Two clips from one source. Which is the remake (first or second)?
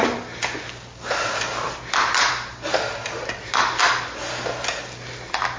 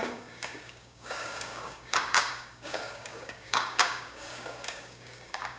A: second